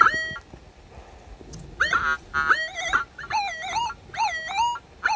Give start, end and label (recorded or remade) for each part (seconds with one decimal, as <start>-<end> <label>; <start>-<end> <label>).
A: 0.0-5.2 recorded